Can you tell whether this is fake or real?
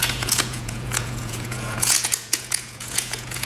fake